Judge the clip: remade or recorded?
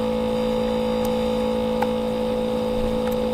recorded